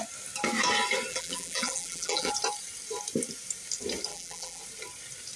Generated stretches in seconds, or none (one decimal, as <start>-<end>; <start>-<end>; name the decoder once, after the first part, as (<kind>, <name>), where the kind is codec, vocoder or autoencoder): 1.1-2.3 (vocoder, BigVGAN v2); 4.1-4.6